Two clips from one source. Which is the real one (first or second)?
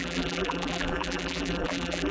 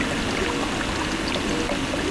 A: second